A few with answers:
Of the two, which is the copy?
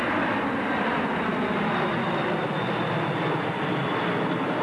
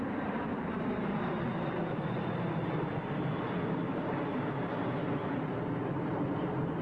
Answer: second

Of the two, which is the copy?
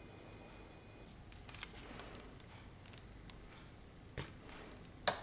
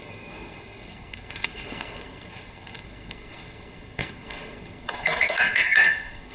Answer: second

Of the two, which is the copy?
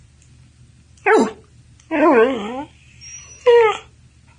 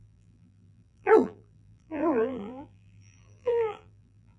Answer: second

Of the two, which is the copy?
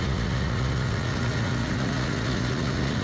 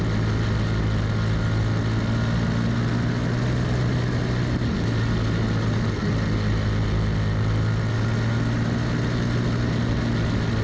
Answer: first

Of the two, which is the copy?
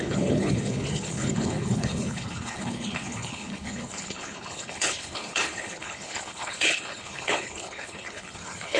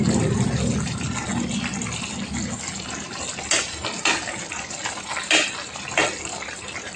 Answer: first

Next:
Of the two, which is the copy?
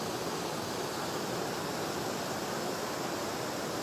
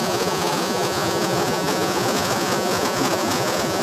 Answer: second